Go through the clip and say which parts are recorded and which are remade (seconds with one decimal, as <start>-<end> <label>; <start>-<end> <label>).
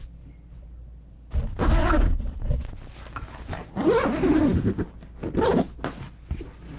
0.0-1.8 recorded; 1.8-2.7 remade; 2.7-6.8 recorded